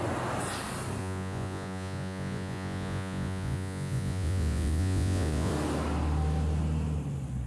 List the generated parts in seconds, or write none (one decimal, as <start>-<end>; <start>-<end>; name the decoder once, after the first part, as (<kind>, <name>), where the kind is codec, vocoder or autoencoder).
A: 1.0-5.5 (vocoder, Vocos)